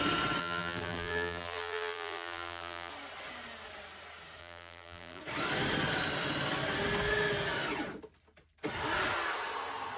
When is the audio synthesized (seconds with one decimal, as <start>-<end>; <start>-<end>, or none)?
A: 0.4-2.9; 4.4-5.2